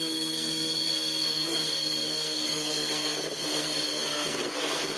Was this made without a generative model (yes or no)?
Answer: no